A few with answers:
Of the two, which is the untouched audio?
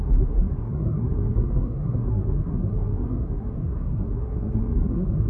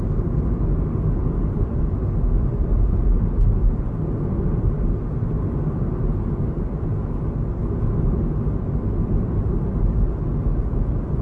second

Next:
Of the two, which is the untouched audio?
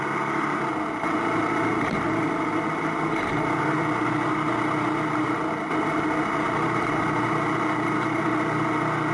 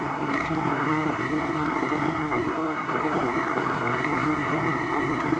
first